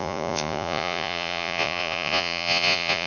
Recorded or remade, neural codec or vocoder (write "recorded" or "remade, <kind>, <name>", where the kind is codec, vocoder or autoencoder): remade, vocoder, Vocos